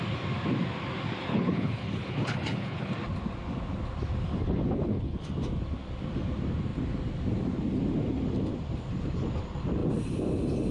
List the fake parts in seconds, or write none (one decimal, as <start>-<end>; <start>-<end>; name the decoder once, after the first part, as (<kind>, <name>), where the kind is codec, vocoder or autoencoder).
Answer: 1.3-2.9 (codec, HILCodec); 4.4-5.2